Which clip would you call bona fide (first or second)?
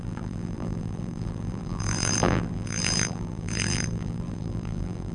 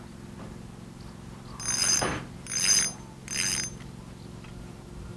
second